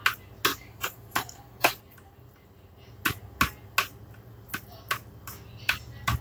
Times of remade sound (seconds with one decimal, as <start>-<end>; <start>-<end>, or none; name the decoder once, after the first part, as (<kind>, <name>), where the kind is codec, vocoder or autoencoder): 0.5-1.8 (codec, DAC)